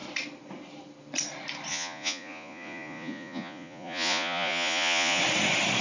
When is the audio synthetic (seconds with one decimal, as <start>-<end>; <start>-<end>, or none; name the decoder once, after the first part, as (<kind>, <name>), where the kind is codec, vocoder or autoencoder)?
1.7-5.2 (vocoder, Vocos)